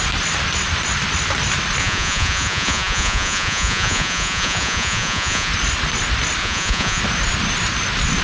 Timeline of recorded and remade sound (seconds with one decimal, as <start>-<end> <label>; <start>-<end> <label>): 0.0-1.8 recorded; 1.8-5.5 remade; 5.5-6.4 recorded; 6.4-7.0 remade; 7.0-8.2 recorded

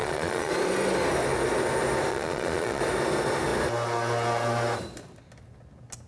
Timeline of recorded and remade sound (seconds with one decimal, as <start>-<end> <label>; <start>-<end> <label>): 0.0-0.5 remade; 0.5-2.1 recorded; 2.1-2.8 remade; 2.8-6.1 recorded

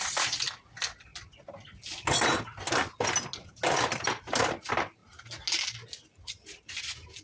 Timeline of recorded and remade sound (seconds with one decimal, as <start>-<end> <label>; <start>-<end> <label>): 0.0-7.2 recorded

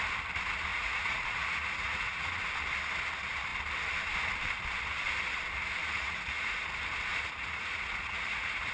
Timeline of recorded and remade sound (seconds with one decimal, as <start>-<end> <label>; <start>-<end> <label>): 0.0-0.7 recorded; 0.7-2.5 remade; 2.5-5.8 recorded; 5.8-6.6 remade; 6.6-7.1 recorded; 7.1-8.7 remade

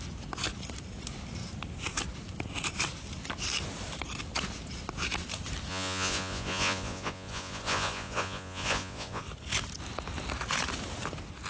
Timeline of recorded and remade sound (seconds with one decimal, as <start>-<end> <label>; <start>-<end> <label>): 0.0-5.7 recorded; 5.7-9.2 remade; 9.2-11.5 recorded

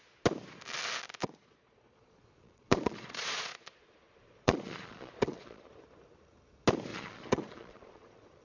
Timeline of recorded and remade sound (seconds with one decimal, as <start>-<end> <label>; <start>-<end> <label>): 0.0-1.2 recorded; 1.2-5.7 remade; 5.7-6.9 recorded; 6.9-8.4 remade

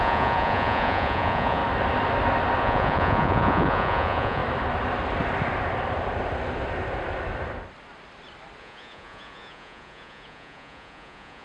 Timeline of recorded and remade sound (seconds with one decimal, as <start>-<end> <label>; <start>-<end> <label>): 0.0-1.6 remade; 1.6-2.6 recorded; 2.6-4.4 remade; 4.4-8.6 recorded; 8.6-11.4 remade